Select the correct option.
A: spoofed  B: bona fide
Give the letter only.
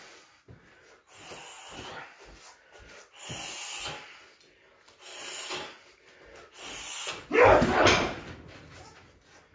B